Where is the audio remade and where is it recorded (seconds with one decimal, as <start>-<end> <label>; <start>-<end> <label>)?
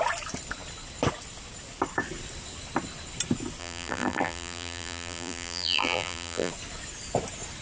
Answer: 0.0-3.6 recorded; 3.6-6.5 remade; 6.5-7.6 recorded